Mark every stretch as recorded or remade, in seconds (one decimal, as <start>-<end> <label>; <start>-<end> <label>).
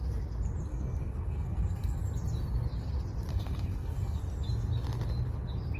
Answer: 0.0-0.7 recorded; 0.7-2.0 remade; 2.0-3.3 recorded; 3.3-4.2 remade; 4.2-5.8 recorded